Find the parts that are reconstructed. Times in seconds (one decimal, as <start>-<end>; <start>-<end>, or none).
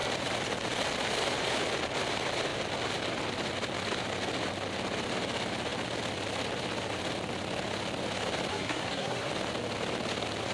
8.5-9.3